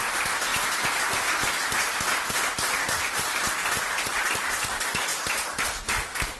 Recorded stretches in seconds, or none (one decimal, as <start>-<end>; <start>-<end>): 0.0-6.4